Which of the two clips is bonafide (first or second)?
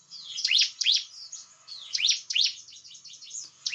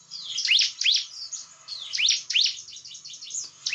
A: second